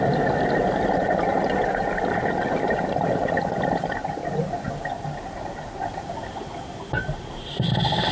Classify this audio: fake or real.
real